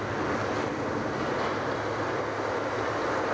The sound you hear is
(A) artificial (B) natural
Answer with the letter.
B